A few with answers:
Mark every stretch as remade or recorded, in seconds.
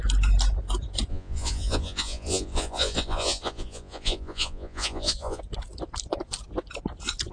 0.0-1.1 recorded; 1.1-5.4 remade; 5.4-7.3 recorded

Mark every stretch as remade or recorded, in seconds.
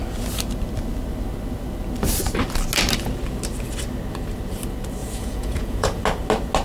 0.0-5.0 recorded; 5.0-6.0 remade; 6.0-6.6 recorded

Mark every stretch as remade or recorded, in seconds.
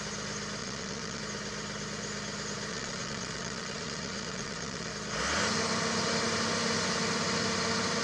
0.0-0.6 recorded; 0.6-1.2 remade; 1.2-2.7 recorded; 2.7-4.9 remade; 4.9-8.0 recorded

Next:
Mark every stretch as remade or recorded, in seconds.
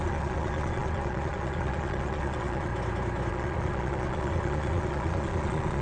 0.0-2.7 remade; 2.7-3.3 recorded; 3.3-5.8 remade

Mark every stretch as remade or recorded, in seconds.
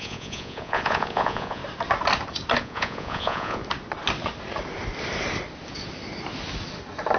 0.0-1.6 remade; 1.6-2.6 recorded; 2.6-3.6 remade; 3.6-7.2 recorded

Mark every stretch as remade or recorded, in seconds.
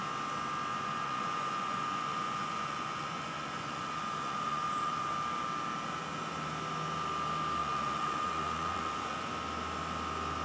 0.0-0.7 recorded; 0.7-5.1 remade; 5.1-7.6 recorded; 7.6-9.3 remade; 9.3-10.4 recorded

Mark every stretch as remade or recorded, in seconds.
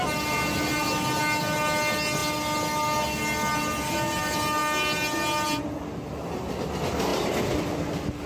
0.0-8.3 recorded